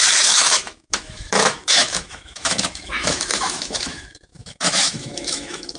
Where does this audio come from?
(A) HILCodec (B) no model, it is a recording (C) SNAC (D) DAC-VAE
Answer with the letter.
D